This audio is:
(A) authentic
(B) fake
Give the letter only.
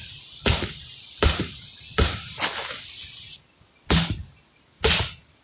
A